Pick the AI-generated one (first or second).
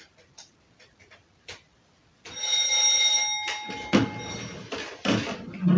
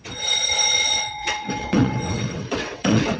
second